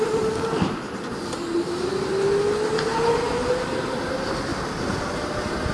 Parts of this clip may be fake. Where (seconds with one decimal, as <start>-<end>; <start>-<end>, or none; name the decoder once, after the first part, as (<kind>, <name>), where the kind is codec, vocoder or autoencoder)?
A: none